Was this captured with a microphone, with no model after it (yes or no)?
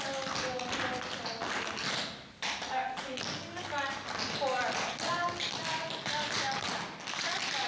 yes